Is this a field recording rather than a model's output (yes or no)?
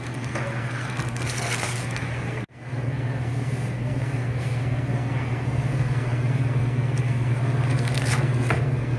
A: no